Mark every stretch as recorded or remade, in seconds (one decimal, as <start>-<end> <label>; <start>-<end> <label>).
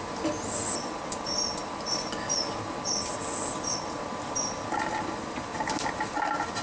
0.0-6.6 recorded